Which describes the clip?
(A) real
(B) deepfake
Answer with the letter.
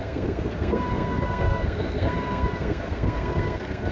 B